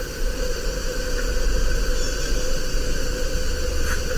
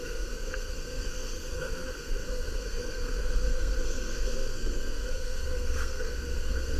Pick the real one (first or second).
first